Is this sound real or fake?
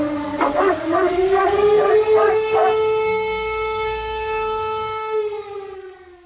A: fake